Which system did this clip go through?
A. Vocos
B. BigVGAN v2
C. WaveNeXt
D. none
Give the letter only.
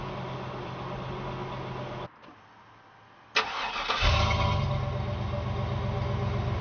D